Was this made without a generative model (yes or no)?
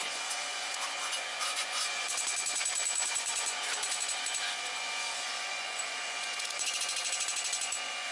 no